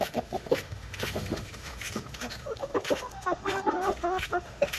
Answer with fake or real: fake